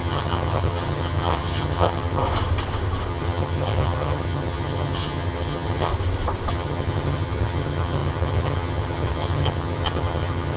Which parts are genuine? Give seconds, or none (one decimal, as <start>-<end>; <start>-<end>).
2.2-3.1; 5.9-6.5